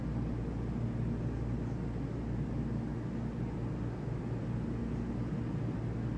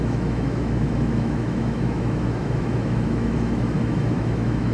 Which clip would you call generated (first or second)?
second